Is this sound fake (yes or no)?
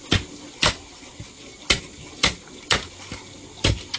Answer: no